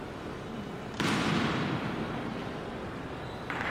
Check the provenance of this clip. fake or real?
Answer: fake